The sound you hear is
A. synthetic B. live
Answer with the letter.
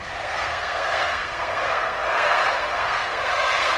A